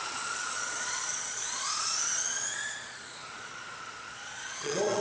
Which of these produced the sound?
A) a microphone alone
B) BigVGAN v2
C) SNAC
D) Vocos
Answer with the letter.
D